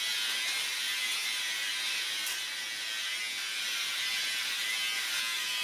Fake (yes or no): no